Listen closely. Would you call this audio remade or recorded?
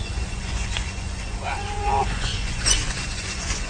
remade